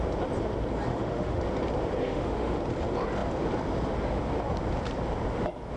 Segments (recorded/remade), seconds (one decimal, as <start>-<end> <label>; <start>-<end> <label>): 0.0-0.9 recorded; 0.9-1.4 remade; 1.4-2.0 recorded; 2.0-2.6 remade; 2.6-5.8 recorded